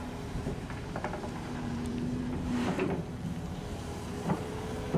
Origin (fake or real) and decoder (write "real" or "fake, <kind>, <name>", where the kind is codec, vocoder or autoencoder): fake, vocoder, BigVGAN v2